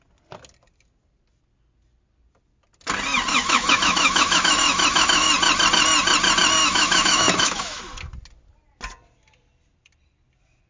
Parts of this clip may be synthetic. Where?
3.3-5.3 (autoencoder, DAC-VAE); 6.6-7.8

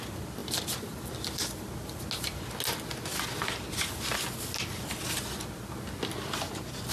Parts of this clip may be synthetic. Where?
none